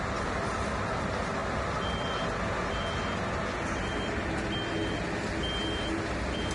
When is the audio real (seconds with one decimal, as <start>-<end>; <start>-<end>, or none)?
0.0-6.5